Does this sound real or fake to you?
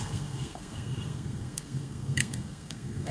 fake